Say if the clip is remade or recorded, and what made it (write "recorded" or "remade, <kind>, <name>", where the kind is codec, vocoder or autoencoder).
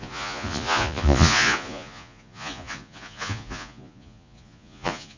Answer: remade, vocoder, Vocos